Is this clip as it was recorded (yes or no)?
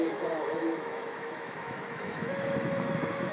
no